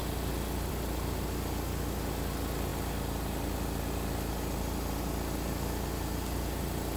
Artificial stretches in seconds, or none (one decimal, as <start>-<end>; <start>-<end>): none